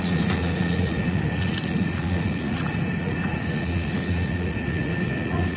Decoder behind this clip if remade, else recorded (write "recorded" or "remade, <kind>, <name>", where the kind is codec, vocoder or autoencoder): remade, vocoder, Vocos